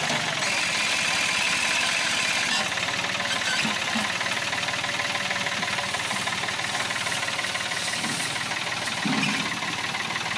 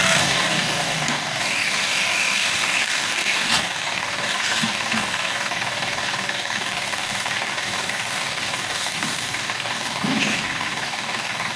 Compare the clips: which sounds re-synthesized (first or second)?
second